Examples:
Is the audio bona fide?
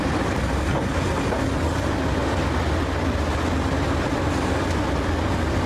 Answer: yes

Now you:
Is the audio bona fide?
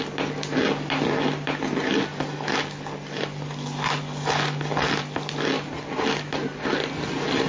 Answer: yes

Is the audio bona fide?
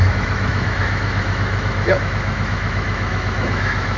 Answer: no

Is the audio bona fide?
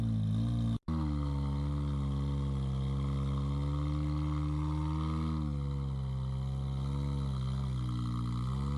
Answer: yes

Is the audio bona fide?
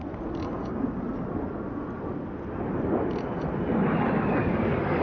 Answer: yes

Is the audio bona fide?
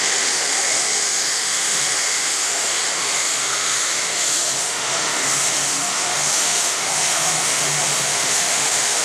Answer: no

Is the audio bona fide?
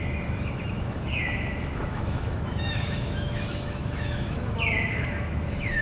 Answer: no